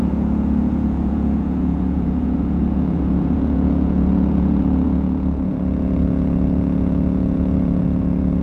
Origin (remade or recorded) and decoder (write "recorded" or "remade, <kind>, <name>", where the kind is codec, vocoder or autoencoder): remade, vocoder, Vocos